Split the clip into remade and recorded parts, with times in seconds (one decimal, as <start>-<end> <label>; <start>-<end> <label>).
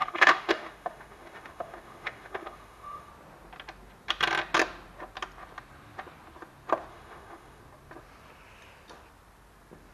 0.0-3.1 remade; 3.1-6.9 recorded; 6.9-7.6 remade; 7.6-9.9 recorded